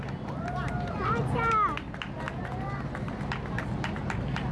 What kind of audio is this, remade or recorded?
recorded